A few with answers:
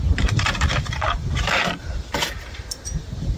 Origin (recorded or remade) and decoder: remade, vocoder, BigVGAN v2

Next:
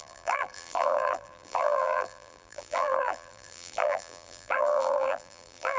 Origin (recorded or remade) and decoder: remade, vocoder, BigVGAN v2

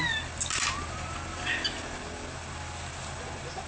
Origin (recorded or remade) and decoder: recorded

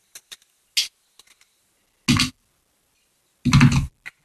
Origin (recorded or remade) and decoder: recorded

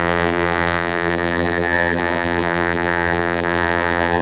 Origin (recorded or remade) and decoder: remade, vocoder, BigVGAN v2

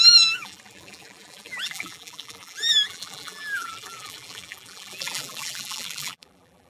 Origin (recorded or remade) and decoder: remade, vocoder, BigVGAN v2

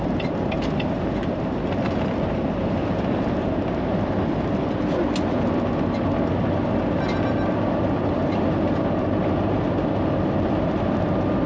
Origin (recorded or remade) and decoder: recorded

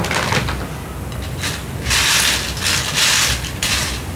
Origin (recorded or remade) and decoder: recorded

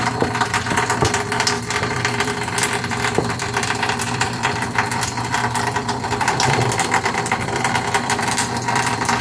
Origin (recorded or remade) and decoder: remade, vocoder, BigVGAN v2